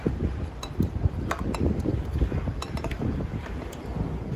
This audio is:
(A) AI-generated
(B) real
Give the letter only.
B